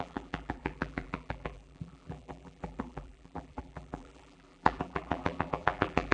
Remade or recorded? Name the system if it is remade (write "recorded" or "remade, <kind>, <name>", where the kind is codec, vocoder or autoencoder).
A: remade, vocoder, BigVGAN v2